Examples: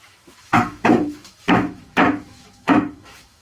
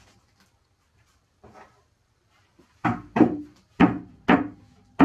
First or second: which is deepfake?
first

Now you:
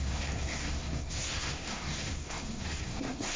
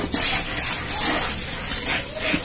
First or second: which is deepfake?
first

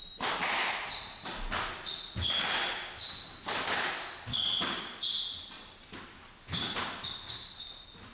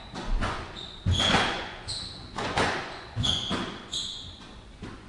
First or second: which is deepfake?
second